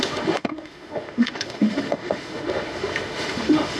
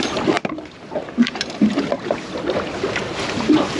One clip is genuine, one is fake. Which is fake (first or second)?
first